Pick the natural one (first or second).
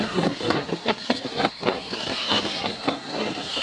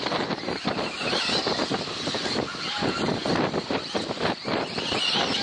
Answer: second